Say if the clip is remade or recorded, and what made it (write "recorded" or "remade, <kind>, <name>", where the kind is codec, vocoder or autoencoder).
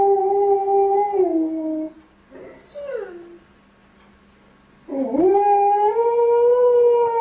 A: recorded